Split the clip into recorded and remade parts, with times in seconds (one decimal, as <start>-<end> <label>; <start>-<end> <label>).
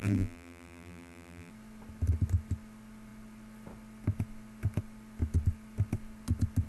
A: 0.0-1.5 remade; 1.5-6.7 recorded